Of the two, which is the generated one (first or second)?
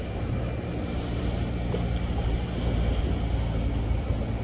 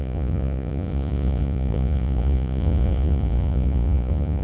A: second